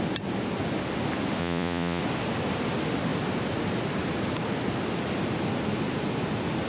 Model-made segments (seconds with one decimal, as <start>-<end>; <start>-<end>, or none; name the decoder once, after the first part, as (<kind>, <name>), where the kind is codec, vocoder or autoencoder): 1.4-2.0 (vocoder, Vocos)